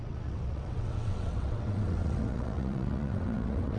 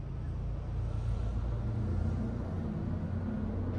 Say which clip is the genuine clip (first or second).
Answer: second